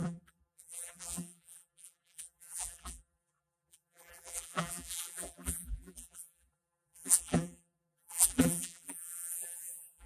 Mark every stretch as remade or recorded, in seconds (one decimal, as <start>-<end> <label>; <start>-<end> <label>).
0.0-10.1 remade